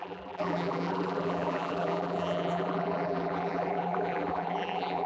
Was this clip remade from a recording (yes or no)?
yes